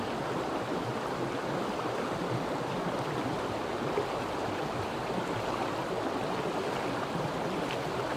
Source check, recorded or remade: recorded